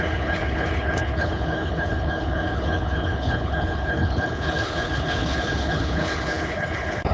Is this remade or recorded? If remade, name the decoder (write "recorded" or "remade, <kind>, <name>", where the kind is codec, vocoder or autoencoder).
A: remade, codec, HILCodec